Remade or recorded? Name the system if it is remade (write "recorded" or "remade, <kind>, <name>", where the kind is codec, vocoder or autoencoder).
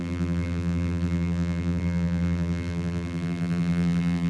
remade, vocoder, BigVGAN v2